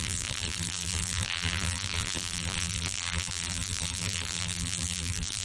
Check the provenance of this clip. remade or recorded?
remade